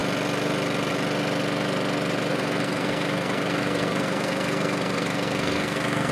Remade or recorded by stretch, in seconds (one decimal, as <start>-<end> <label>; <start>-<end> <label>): 0.0-2.3 recorded; 2.3-6.1 remade